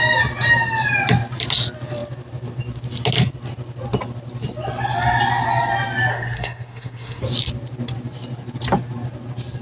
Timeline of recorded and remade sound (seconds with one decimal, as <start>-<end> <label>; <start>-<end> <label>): 0.0-6.1 recorded; 6.1-7.2 remade; 7.2-9.6 recorded